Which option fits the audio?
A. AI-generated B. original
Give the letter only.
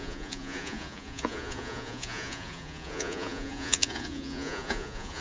A